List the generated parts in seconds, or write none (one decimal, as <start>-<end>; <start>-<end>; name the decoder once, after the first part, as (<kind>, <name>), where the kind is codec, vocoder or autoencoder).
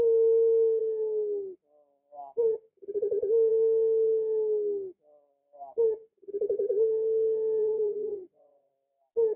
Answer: 7.6-8.7 (vocoder, Vocos)